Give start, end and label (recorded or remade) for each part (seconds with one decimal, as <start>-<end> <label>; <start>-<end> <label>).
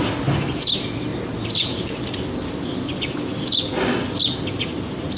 0.0-5.2 recorded